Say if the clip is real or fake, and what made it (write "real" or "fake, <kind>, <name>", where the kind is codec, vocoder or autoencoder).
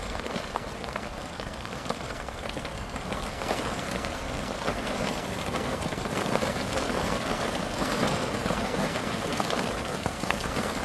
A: fake, codec, SNAC